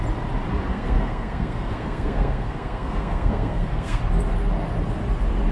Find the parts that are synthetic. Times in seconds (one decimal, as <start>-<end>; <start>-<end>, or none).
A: 0.7-4.0